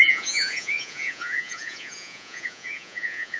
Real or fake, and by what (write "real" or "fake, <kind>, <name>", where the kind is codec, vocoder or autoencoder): fake, vocoder, Vocos